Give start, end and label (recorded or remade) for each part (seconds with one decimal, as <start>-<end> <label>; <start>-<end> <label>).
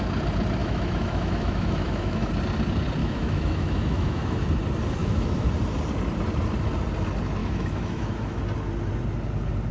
0.0-0.6 recorded; 0.6-2.3 remade; 2.3-3.0 recorded; 3.0-4.5 remade; 4.5-5.0 recorded; 5.0-5.5 remade; 5.5-7.4 recorded; 7.4-8.4 remade; 8.4-9.7 recorded